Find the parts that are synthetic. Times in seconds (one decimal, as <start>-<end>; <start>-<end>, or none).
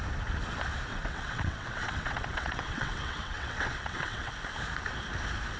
0.9-4.3